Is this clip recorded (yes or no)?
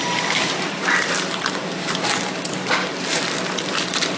yes